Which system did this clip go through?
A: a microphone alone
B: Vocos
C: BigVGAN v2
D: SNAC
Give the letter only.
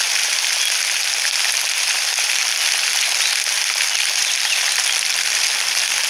A